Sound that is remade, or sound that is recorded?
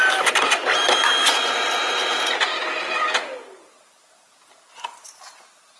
remade